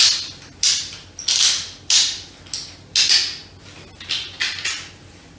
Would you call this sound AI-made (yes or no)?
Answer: no